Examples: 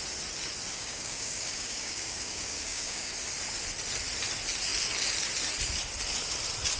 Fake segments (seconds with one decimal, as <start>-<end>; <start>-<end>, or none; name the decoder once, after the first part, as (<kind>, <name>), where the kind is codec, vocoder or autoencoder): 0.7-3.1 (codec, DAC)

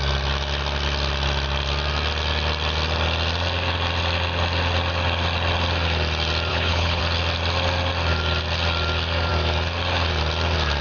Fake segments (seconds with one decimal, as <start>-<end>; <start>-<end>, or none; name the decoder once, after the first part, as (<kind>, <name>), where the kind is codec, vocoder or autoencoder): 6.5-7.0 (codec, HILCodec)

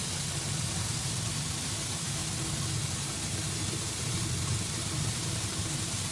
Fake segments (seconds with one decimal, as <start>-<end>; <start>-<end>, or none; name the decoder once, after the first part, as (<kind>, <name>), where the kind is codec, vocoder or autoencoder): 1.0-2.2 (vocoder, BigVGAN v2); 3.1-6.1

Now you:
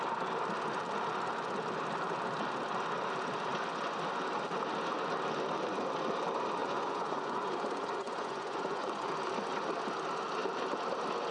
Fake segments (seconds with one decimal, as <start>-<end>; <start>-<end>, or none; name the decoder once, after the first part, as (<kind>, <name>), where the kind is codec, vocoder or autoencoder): 6.6-9.1 (vocoder, Vocos)

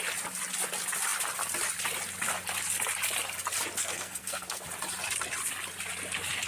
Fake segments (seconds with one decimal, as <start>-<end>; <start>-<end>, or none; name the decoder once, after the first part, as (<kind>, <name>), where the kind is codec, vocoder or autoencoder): 3.8-4.6 (codec, SNAC)

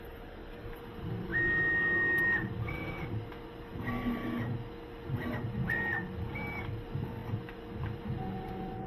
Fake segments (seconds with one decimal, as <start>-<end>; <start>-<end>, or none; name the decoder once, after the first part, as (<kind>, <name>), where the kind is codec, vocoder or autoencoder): 1.3-2.2 (autoencoder, DAC-VAE)

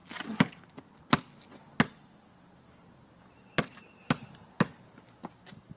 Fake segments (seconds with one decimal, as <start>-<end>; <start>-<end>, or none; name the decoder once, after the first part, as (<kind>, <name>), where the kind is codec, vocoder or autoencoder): none